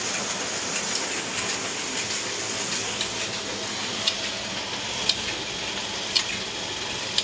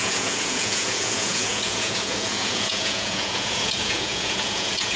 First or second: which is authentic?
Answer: first